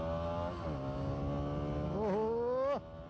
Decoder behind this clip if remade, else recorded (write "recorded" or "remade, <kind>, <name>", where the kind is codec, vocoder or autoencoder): recorded